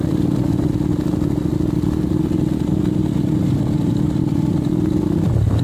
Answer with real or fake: real